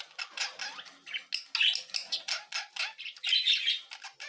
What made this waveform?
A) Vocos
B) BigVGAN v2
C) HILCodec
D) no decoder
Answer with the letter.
D